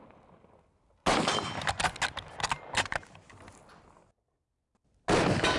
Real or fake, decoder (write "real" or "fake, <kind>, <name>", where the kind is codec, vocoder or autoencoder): real